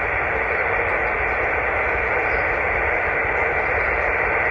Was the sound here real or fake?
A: real